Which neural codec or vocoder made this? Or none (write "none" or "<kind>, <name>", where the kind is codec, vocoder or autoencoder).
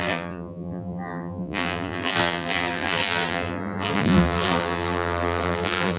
vocoder, BigVGAN v2